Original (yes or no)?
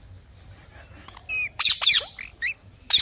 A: yes